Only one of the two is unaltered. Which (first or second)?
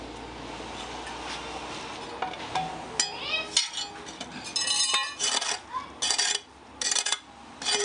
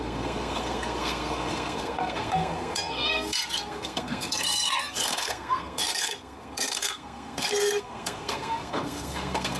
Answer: first